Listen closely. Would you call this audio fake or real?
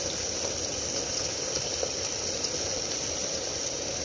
real